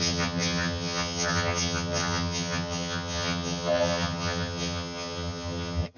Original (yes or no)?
no